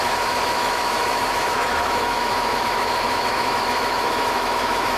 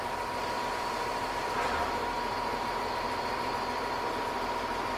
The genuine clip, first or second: second